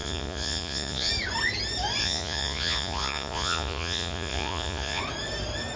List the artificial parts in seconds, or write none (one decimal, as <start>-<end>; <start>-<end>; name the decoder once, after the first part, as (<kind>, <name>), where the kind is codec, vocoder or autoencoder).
0.0-1.1 (vocoder, Vocos); 2.0-5.0